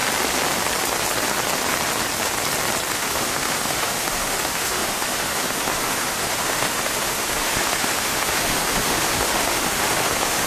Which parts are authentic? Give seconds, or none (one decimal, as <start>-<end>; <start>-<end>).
0.0-2.9

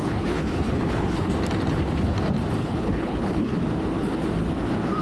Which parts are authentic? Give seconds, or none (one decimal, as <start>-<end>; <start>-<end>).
1.3-2.6; 3.6-5.0